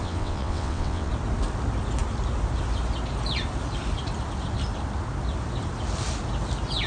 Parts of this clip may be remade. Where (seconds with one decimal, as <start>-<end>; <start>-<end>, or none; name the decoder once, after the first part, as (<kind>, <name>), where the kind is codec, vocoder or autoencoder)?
0.0-1.1 (vocoder, WaveNeXt)